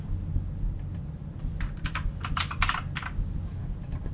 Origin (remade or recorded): recorded